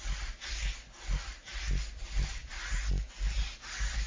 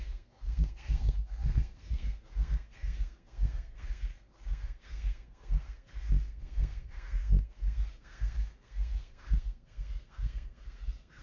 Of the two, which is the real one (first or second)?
first